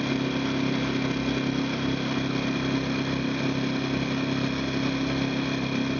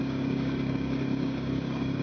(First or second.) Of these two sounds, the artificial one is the second